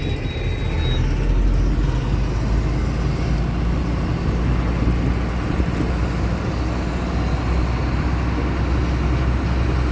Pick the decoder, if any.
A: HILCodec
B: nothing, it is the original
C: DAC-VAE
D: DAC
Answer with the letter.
B